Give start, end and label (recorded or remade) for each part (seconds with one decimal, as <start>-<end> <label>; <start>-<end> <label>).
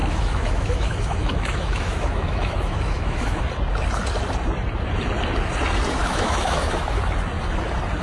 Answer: 0.0-3.4 remade; 3.4-6.0 recorded; 6.0-7.0 remade; 7.0-8.0 recorded